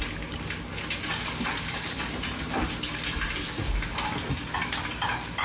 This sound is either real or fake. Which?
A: real